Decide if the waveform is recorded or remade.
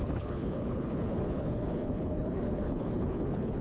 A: remade